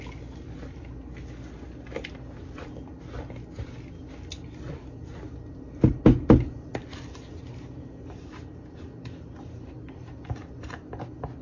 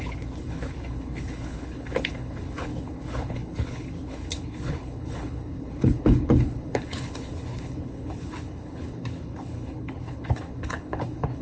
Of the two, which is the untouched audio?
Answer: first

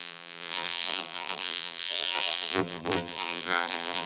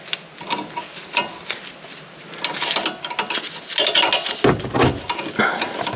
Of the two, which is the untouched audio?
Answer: second